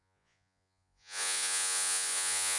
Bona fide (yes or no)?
no